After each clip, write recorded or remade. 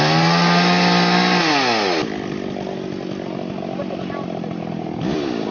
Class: recorded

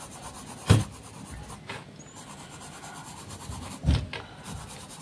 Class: recorded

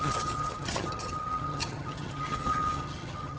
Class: remade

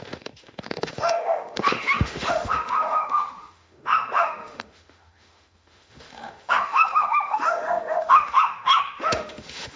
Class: remade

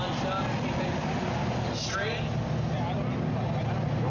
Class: recorded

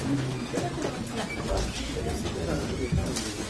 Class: recorded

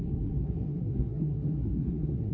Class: remade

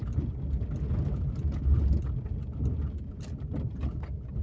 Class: recorded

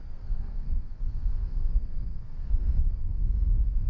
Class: remade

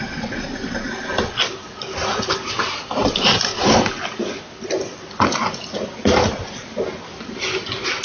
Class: recorded